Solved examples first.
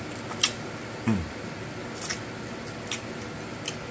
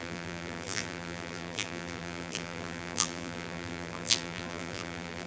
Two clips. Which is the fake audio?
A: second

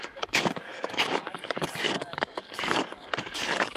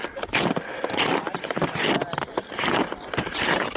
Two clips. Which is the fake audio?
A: first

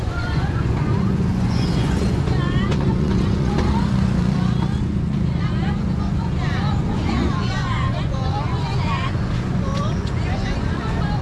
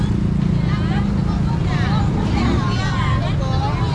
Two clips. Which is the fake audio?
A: first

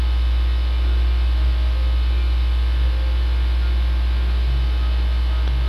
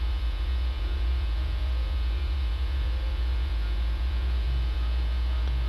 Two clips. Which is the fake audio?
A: second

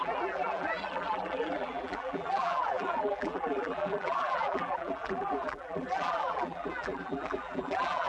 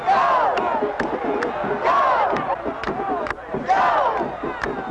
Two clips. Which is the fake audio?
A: first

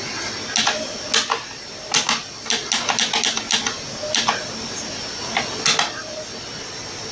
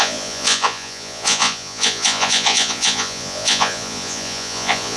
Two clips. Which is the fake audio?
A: second